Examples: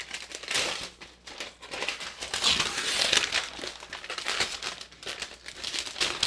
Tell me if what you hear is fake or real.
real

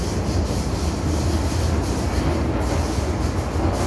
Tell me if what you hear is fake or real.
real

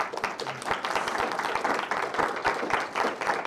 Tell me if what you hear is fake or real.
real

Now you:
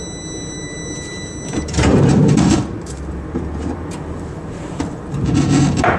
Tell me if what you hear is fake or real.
fake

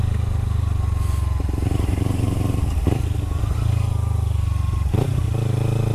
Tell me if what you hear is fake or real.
real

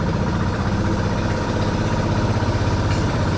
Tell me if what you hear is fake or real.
fake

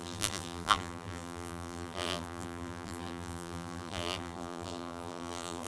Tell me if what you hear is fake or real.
fake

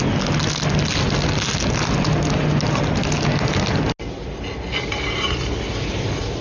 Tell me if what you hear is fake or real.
real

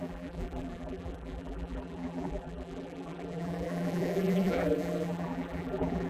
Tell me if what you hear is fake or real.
fake